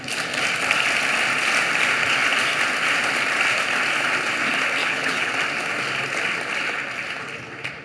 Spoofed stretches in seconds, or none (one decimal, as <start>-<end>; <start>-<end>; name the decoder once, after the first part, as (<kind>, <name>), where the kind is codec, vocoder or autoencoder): 4.8-5.3 (codec, HILCodec)